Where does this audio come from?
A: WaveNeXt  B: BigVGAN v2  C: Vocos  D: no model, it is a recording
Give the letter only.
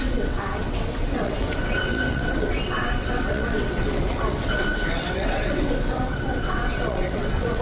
A